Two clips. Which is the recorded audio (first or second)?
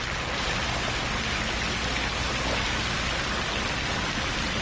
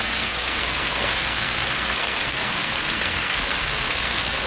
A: first